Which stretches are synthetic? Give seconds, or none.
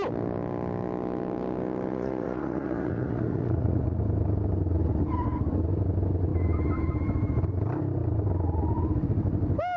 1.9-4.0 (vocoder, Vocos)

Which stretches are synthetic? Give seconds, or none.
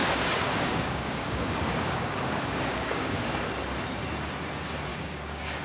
0.0-3.4 (codec, DAC); 4.9-5.6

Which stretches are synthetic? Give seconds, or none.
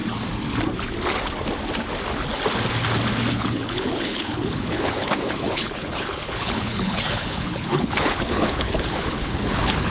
3.3-9.9 (codec, HILCodec)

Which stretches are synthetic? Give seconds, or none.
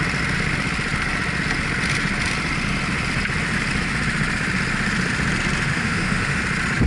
5.7-6.4 (autoencoder, DAC-VAE)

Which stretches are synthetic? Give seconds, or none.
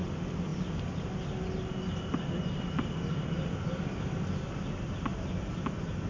none